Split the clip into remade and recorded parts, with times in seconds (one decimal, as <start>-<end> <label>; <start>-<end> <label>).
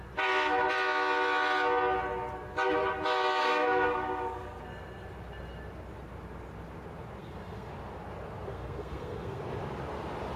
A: 0.0-3.4 recorded; 3.4-4.6 remade; 4.6-7.2 recorded; 7.2-7.7 remade; 7.7-8.5 recorded; 8.5-9.4 remade; 9.4-10.4 recorded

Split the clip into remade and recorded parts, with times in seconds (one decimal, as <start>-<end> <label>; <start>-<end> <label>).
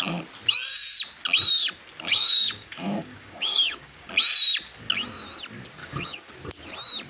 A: 0.0-2.2 recorded; 2.2-4.1 remade; 4.1-5.8 recorded; 5.8-6.3 remade; 6.3-7.1 recorded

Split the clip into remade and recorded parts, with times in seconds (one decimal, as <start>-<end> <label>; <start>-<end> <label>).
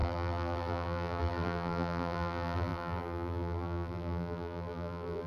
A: 0.0-5.3 remade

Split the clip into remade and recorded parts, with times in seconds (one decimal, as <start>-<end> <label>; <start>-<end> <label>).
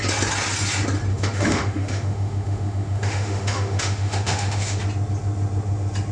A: 0.0-1.1 recorded; 1.1-4.8 remade; 4.8-6.1 recorded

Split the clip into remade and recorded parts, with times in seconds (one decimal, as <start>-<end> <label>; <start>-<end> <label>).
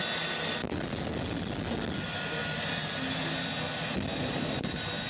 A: 0.0-4.1 recorded; 4.1-5.1 remade